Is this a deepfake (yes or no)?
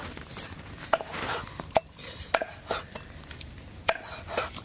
no